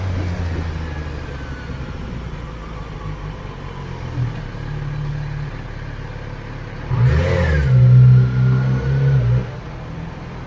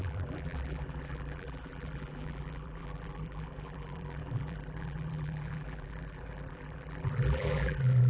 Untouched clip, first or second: first